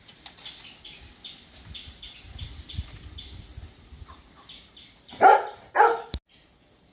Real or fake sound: real